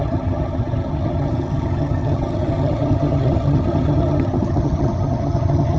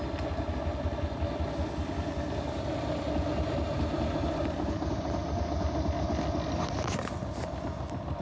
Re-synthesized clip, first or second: first